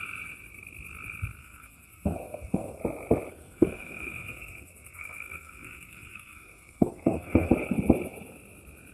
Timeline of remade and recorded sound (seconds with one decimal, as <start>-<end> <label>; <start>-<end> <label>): 0.0-1.4 recorded; 1.4-2.8 remade; 2.8-3.4 recorded; 3.4-7.5 remade; 7.5-8.9 recorded